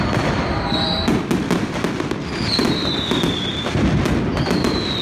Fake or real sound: real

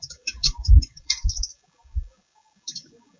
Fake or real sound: fake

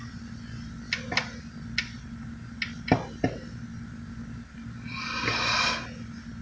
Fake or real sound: real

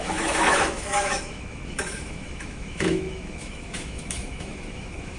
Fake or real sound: fake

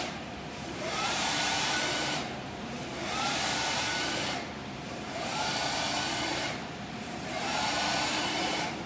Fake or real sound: fake